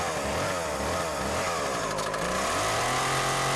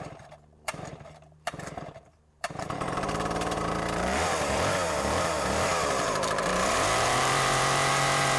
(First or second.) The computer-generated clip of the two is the second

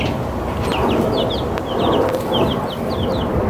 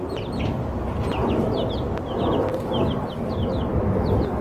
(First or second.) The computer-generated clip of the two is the first